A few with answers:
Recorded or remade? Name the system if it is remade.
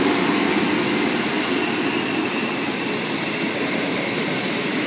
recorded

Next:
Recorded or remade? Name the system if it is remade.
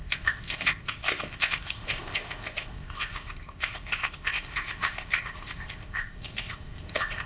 remade, codec, ZipCodec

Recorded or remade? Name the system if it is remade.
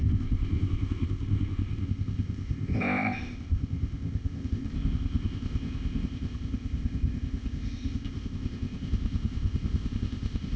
remade, codec, ZipCodec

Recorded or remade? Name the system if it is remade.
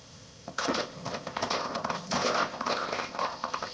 remade, codec, ZipCodec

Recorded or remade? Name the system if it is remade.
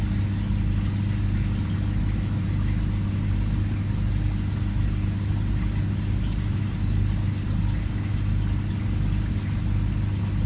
recorded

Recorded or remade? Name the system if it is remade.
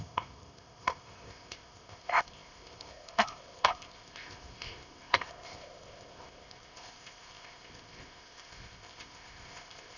remade, codec, ZipCodec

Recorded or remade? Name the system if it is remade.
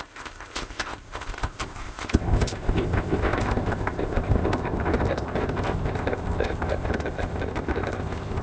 remade, codec, ZipCodec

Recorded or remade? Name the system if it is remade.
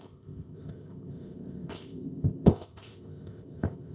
remade, codec, ZipCodec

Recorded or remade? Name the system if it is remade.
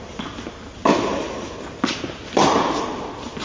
recorded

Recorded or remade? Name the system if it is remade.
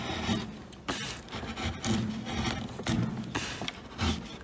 recorded